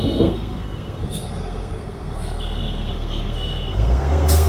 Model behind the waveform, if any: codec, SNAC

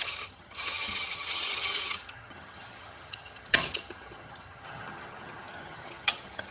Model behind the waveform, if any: vocoder, HiFi-GAN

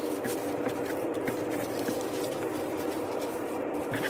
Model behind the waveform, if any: vocoder, BigVGAN v2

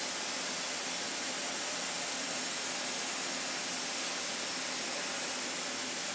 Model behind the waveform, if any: none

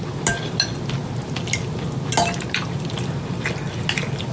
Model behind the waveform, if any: none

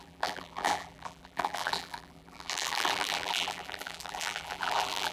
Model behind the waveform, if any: vocoder, BigVGAN v2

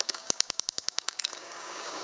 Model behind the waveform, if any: codec, DAC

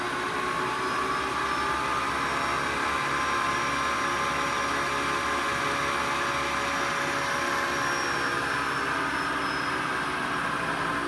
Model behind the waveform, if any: none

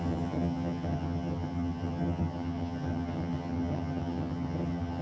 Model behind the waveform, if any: vocoder, HiFi-GAN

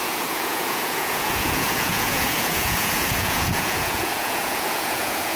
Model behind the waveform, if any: vocoder, Vocos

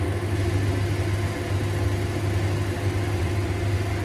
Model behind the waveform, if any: none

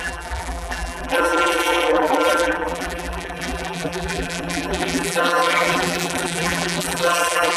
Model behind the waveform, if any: vocoder, BigVGAN v2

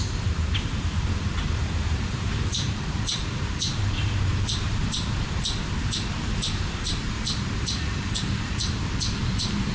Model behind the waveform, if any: vocoder, BigVGAN v2